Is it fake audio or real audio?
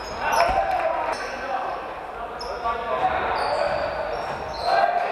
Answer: real